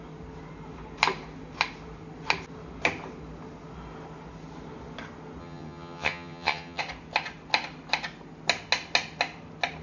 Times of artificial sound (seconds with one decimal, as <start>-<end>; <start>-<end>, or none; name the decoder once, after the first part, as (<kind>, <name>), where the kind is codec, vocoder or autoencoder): 5.4-6.8 (vocoder, HiFi-GAN)